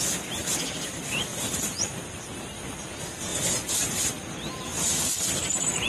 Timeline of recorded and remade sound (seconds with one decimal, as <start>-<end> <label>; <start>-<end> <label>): 0.0-1.3 recorded; 1.3-1.8 remade; 1.8-3.3 recorded; 3.3-4.0 remade; 4.0-4.7 recorded; 4.7-5.9 remade